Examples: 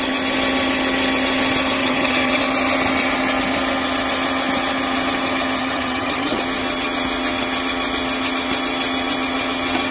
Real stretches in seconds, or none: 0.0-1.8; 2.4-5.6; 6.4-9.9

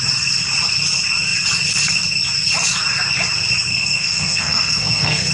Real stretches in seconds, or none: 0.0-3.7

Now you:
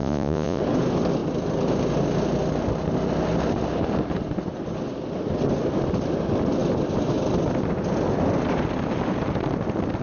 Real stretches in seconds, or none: 0.6-10.0

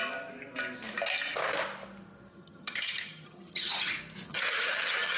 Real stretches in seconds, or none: 0.0-2.3; 3.9-4.3

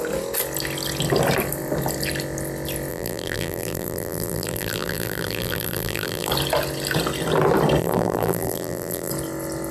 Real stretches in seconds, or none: 0.0-2.9; 6.3-7.8; 9.1-9.7